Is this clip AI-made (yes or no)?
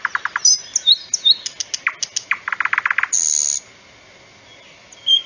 no